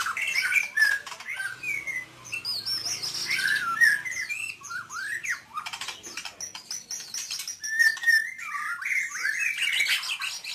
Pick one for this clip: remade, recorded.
recorded